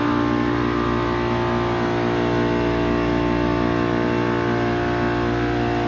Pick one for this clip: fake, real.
real